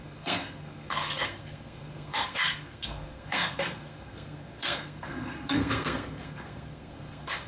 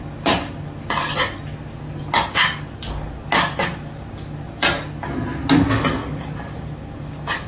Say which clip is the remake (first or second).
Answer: first